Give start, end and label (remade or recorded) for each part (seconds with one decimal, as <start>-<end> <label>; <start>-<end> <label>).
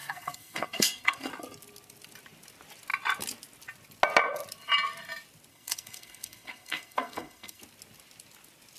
0.0-1.3 remade; 1.3-5.5 recorded; 5.5-7.6 remade; 7.6-8.8 recorded